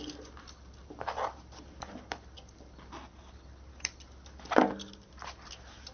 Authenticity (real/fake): real